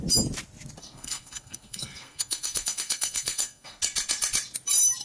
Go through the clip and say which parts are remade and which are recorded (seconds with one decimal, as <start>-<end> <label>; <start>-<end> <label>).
0.0-0.8 recorded; 0.8-3.8 remade; 3.8-5.0 recorded